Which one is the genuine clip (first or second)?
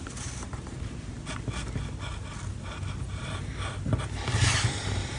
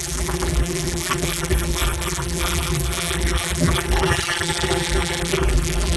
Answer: first